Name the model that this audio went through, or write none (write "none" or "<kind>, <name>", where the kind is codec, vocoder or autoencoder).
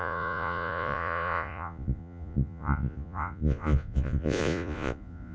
vocoder, Vocos